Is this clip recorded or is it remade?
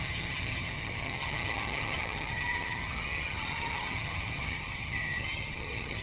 remade